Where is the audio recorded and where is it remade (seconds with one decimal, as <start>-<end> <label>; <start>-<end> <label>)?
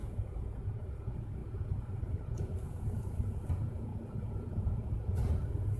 0.0-5.8 remade